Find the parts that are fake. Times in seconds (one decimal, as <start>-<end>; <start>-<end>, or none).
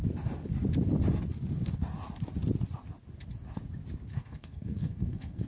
4.1-5.5